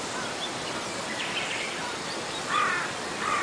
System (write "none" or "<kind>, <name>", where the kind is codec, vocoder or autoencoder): none